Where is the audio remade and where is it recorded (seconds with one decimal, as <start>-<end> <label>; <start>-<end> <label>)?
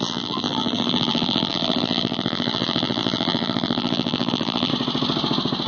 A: 0.0-4.7 remade; 4.7-5.7 recorded